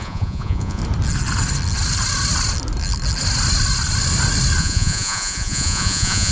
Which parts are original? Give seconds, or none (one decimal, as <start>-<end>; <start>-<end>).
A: 0.8-4.6

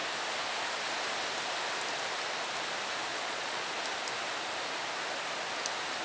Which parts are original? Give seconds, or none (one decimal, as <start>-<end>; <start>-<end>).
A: 0.0-3.1; 3.7-6.0

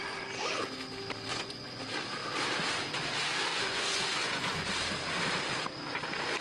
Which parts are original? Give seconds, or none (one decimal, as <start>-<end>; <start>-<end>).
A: 0.0-1.3; 1.8-3.5; 4.7-6.4

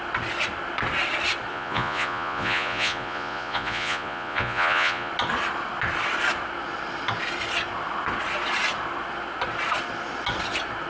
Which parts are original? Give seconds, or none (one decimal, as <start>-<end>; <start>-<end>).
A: 0.0-1.5; 5.1-10.9

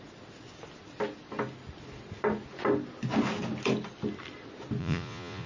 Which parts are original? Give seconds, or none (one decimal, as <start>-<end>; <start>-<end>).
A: 0.0-4.8

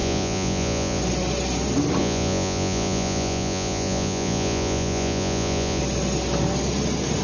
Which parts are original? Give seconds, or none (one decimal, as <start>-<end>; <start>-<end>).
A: 1.0-2.0; 5.8-7.2

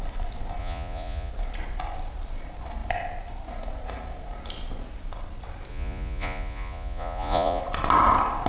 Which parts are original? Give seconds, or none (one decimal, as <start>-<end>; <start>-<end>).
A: 0.0-0.6; 1.3-5.7; 7.6-8.5